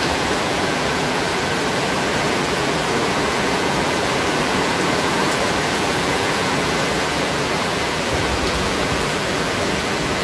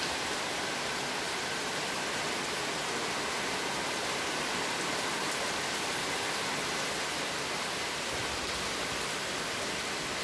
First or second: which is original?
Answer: second